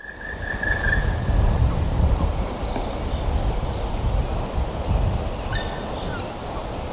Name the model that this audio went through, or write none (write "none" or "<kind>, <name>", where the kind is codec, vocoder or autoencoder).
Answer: none